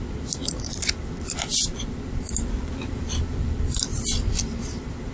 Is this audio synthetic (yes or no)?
yes